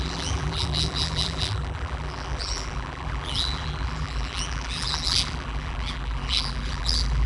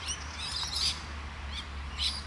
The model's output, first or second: first